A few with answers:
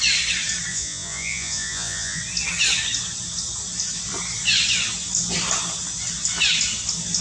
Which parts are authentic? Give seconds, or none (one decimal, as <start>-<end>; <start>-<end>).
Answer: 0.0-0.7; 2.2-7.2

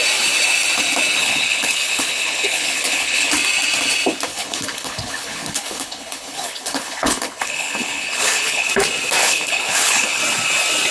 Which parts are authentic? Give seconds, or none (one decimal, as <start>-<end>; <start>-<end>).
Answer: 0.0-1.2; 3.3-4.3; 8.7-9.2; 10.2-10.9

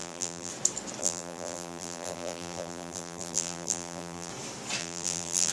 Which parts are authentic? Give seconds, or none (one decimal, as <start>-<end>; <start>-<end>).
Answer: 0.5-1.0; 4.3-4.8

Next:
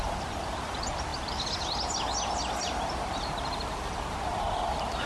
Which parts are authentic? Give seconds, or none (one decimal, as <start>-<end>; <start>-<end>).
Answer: 0.0-5.1

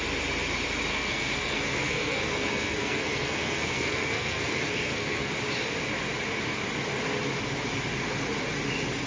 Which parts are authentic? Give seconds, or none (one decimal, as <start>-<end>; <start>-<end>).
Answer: 0.0-0.9; 5.3-9.1